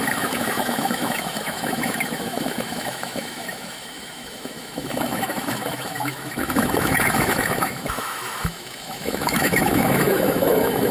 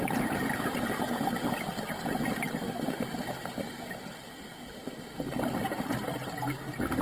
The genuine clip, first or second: second